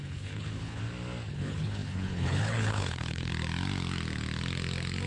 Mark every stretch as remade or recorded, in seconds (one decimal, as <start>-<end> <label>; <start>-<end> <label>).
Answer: 0.0-0.8 remade; 0.8-1.3 recorded; 1.3-3.3 remade; 3.3-5.1 recorded

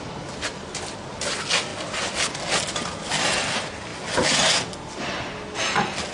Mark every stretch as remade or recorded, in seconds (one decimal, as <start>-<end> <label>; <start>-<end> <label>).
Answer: 0.0-6.1 recorded